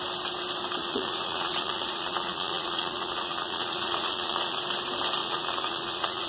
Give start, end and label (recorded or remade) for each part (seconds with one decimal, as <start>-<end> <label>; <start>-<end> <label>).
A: 0.0-0.8 recorded; 0.8-4.6 remade; 4.6-5.2 recorded; 5.2-6.3 remade